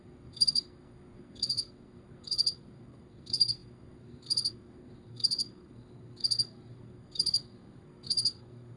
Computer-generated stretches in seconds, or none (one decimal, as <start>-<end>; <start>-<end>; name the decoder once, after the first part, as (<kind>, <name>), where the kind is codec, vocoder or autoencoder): 0.0-8.8 (codec, SNAC)

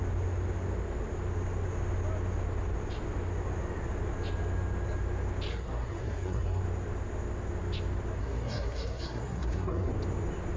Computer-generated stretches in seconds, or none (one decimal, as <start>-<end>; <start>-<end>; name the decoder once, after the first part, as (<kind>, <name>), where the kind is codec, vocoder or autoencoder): 5.5-6.6 (codec, SNAC); 8.2-9.9

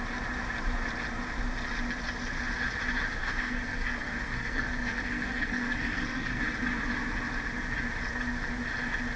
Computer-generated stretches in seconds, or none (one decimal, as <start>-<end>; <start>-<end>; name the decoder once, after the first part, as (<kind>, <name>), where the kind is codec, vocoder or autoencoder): 3.2-6.4 (codec, SNAC)

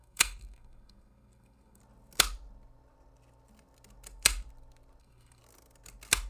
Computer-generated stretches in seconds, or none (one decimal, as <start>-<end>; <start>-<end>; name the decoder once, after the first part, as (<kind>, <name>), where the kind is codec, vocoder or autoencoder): 0.0-1.8 (codec, SNAC); 5.0-5.4

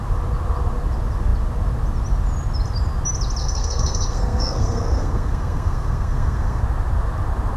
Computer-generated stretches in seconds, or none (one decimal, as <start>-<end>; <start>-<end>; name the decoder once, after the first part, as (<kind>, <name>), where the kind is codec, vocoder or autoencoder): 3.4-6.6 (codec, SNAC)